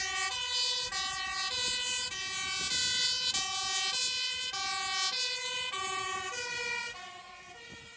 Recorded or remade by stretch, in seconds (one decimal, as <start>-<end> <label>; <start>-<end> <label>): 0.0-8.0 recorded